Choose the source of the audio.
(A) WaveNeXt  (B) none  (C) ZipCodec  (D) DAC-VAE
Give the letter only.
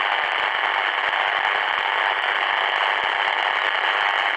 B